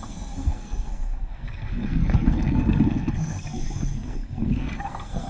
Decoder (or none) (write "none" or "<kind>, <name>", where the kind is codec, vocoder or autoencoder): codec, SNAC